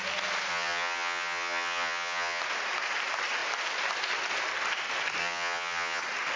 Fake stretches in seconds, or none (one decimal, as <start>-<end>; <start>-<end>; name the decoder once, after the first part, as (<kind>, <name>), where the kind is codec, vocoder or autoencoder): 0.5-2.4 (vocoder, HiFi-GAN); 5.2-6.0